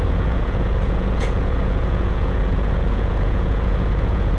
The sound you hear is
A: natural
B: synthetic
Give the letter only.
B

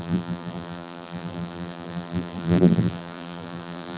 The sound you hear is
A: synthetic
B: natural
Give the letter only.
A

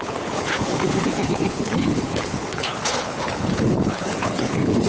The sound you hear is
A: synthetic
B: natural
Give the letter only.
A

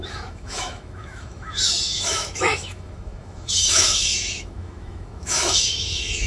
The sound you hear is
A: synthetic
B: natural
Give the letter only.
A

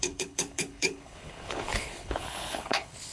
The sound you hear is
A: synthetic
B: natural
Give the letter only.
A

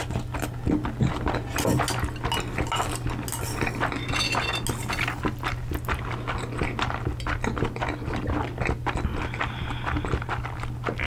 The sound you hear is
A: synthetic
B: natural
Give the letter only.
B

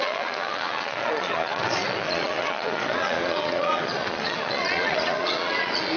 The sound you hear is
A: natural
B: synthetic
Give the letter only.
B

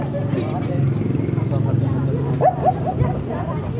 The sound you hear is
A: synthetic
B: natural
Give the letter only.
B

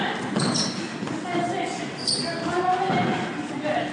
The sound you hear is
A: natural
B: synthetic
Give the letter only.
A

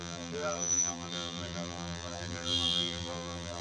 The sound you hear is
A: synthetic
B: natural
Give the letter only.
A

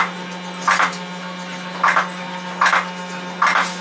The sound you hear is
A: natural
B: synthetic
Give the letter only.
A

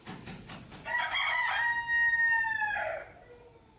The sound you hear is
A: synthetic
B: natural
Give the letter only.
B